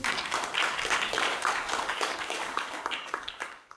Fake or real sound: fake